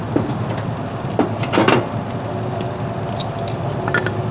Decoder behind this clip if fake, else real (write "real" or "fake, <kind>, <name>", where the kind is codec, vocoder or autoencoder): real